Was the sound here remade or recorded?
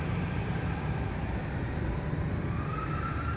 remade